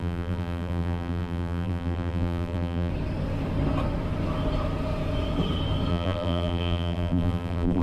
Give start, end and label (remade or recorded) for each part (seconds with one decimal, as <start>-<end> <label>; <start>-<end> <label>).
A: 0.0-2.9 remade; 2.9-5.9 recorded; 5.9-7.8 remade